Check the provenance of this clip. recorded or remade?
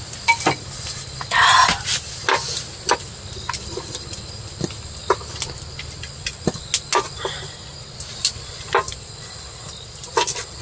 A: recorded